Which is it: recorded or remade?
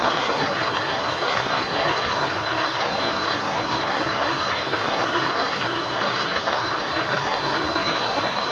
remade